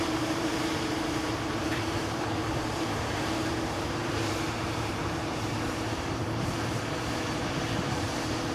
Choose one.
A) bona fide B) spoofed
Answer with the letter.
B